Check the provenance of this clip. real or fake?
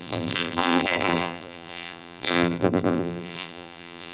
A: fake